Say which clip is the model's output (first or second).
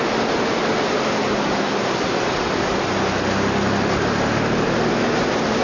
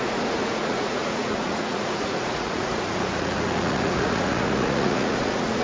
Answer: second